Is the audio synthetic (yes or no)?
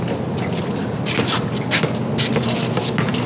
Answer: no